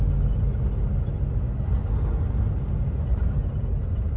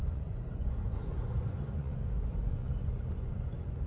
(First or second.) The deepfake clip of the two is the second